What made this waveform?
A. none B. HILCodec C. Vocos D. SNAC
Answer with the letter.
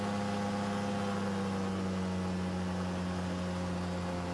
A